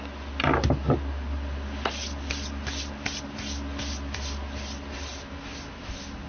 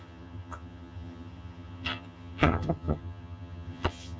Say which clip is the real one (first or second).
first